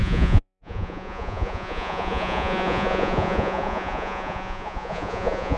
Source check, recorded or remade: remade